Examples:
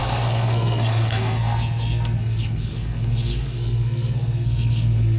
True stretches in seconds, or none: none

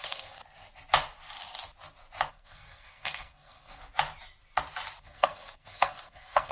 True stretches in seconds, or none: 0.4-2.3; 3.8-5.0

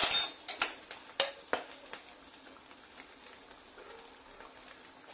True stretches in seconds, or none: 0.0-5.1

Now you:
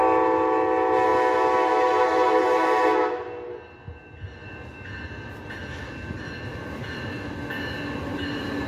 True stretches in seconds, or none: 0.0-8.1